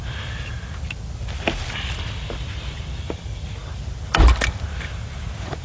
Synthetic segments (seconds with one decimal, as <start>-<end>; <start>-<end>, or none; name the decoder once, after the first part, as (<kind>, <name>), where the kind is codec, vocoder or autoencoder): none